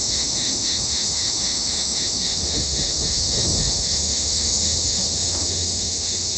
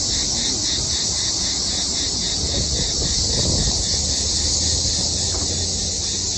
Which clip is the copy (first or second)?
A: first